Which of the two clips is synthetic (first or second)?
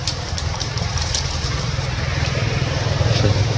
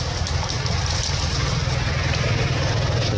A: first